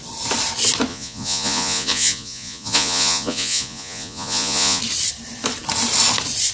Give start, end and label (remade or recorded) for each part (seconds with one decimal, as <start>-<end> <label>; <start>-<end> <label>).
0.0-0.9 recorded; 0.9-4.8 remade; 4.8-6.5 recorded